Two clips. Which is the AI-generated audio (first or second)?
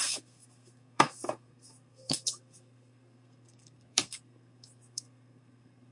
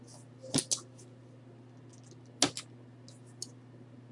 first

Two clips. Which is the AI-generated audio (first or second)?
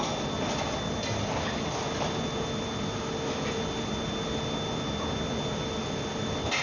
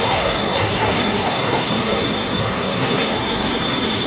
second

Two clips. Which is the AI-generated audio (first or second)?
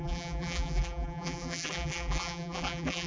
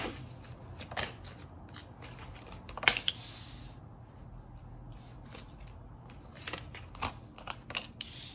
first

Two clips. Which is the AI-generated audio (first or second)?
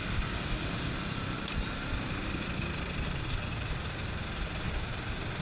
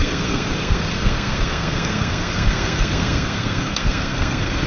second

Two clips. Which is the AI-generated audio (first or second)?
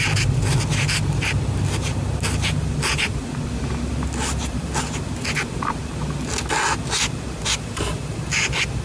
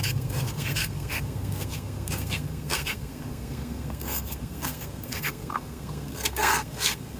second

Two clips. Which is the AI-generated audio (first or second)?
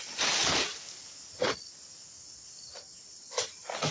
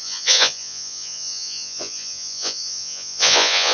second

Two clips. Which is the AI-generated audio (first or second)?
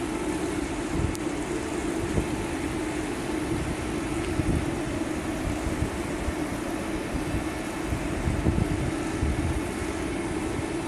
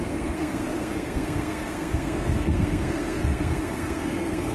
second